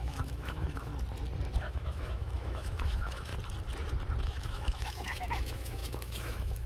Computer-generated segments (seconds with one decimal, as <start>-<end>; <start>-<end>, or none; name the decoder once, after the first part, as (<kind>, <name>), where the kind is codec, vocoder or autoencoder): 0.0-0.9 (autoencoder, DAC-VAE); 1.6-3.3; 4.2-6.7